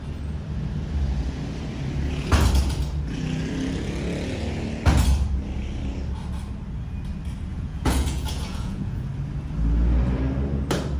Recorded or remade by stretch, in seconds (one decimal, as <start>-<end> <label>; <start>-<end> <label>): 0.0-7.5 recorded; 7.5-9.1 remade; 9.1-11.0 recorded